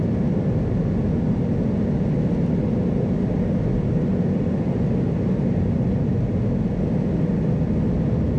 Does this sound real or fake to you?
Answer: real